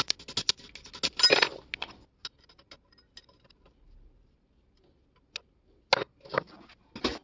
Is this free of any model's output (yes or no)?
yes